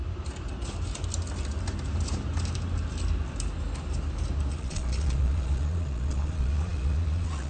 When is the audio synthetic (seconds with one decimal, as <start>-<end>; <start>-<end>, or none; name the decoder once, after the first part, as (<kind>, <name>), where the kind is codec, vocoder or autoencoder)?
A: 4.5-7.5 (vocoder, Vocos)